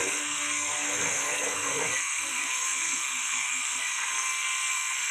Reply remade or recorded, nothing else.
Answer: remade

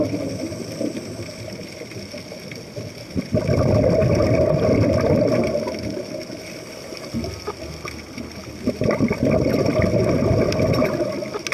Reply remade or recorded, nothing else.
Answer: recorded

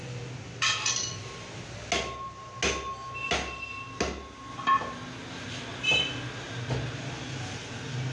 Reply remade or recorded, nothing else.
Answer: recorded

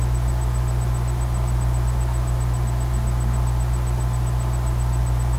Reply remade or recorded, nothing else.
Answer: recorded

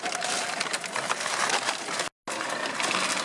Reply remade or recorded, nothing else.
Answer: recorded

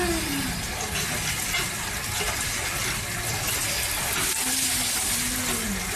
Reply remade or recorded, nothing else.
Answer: recorded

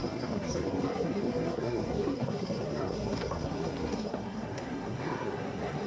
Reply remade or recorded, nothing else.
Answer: remade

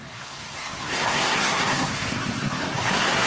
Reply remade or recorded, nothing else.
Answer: remade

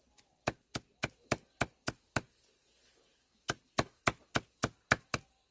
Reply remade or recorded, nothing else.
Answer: recorded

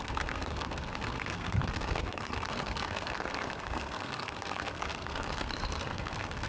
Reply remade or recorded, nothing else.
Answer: remade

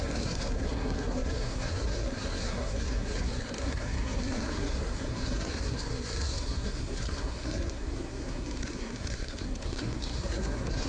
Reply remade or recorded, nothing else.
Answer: remade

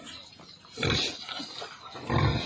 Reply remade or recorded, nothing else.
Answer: recorded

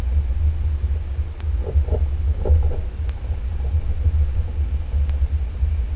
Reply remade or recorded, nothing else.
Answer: recorded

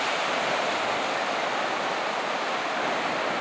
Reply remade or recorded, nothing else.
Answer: recorded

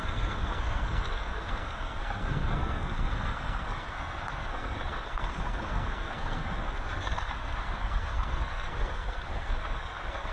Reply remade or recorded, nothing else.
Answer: remade